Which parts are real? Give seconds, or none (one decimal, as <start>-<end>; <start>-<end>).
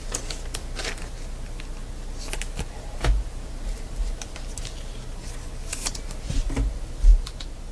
0.0-5.6; 6.3-7.7